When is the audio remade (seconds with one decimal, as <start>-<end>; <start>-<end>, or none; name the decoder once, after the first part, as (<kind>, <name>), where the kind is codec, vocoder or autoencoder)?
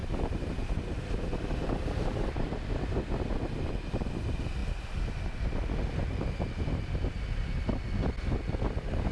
0.0-2.7 (vocoder, BigVGAN v2)